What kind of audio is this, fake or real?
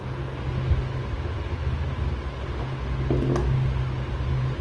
real